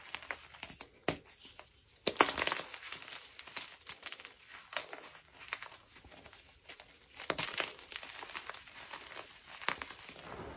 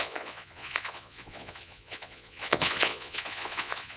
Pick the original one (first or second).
first